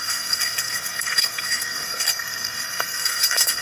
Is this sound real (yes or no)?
no